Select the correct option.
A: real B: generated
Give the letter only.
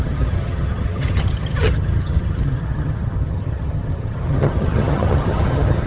B